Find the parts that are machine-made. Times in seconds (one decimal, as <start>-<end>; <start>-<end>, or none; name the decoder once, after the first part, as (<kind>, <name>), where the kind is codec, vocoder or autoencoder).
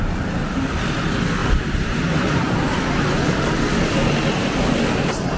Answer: none